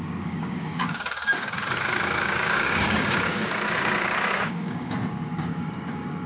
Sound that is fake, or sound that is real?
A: fake